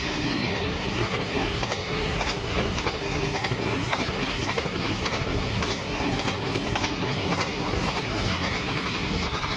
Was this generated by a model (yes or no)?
yes